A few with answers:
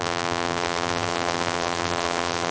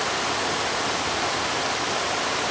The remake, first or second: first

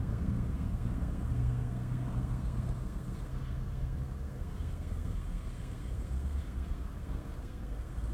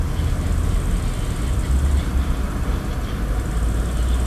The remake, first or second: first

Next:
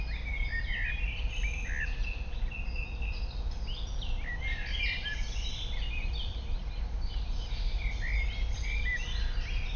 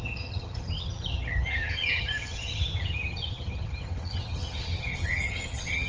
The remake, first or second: second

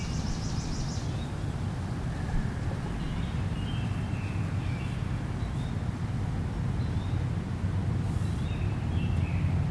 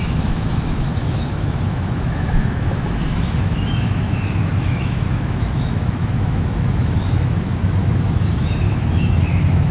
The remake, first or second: second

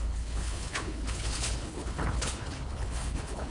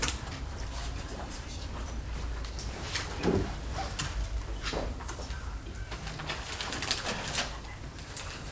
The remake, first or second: first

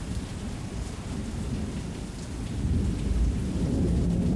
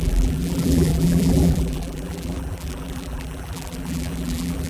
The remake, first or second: second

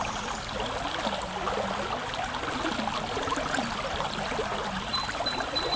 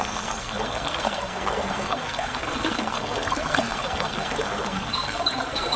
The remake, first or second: second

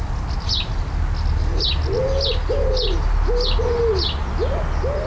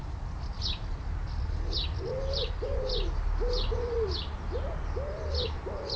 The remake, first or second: second